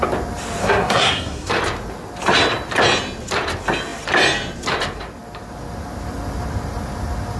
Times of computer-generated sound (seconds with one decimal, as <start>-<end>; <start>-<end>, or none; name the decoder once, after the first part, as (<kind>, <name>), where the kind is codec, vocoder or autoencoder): 0.6-1.5 (codec, SNAC)